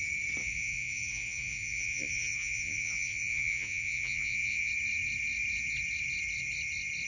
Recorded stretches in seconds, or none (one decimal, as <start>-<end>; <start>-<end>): 0.0-0.4; 4.7-7.1